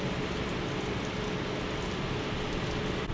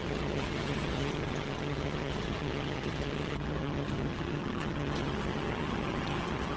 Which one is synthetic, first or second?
second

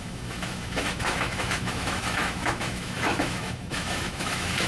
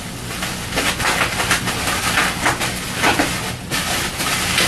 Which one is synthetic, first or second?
first